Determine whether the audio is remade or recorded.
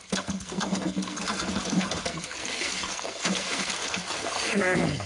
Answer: remade